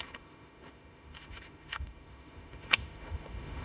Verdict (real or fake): fake